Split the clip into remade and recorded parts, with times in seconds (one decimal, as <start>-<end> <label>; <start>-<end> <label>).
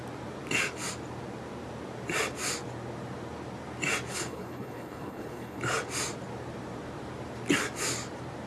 0.0-4.1 recorded; 4.1-5.6 remade; 5.6-8.5 recorded